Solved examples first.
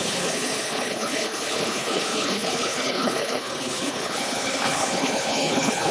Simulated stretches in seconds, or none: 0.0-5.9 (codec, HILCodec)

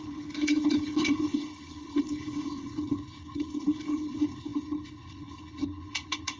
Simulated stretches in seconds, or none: 0.0-6.4 (codec, HILCodec)

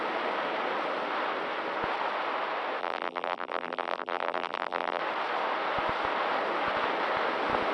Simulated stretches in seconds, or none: 2.8-5.0 (vocoder, BigVGAN v2)

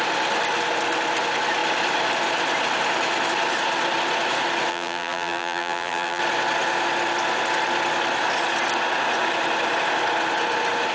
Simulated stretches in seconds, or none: 4.7-6.2 (vocoder, BigVGAN v2)

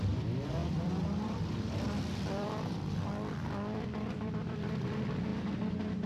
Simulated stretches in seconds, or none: 0.0-6.1 (vocoder, BigVGAN v2)

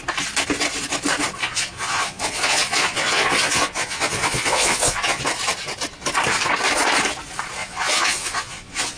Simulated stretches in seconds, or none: 1.4-5.2 (vocoder, Vocos); 7.6-9.0

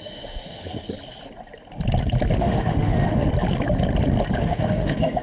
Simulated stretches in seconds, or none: 0.0-0.8 (autoencoder, DAC-VAE); 2.4-3.3; 4.4-5.2